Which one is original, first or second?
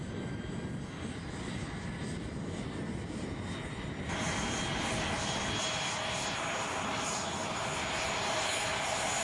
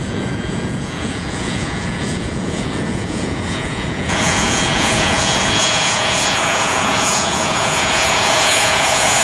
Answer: first